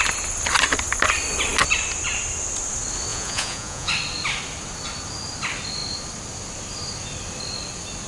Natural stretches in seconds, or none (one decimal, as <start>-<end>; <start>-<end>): 0.0-3.1; 3.9-8.1